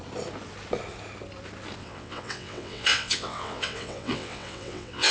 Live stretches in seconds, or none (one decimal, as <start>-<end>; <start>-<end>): 0.0-1.8